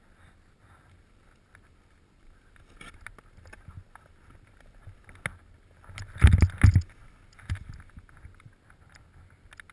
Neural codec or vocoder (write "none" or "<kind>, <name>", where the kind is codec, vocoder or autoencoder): none